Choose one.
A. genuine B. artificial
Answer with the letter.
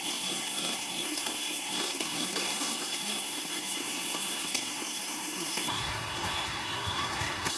B